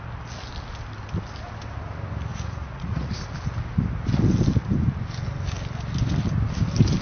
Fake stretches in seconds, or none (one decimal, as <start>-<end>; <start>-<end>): 2.3-3.2